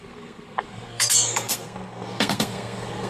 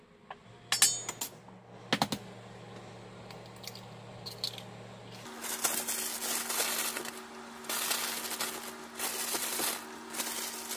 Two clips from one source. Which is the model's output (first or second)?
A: first